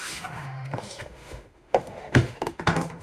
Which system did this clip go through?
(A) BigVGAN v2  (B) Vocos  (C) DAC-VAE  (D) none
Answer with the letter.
C